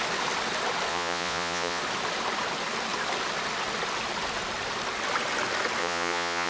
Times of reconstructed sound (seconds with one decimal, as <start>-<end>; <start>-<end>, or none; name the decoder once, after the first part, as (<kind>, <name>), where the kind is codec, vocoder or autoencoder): 0.9-1.8 (vocoder, Vocos); 5.8-6.5